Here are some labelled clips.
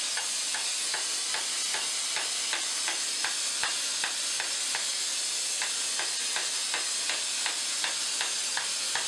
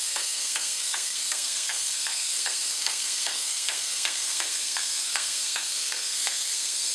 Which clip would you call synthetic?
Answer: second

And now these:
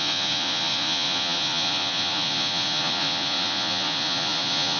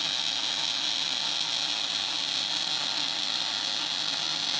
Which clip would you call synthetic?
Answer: first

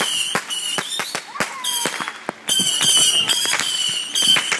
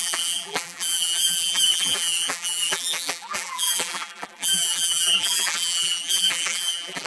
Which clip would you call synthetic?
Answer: second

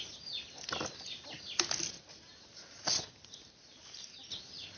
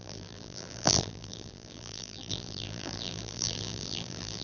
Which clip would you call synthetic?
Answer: second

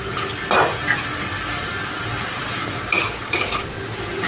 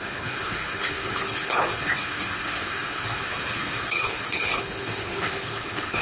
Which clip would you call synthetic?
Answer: second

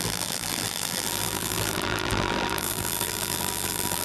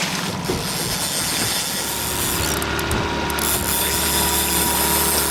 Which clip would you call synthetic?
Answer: first